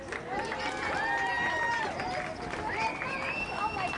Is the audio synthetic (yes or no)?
no